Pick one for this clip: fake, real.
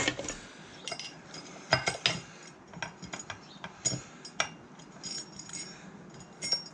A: real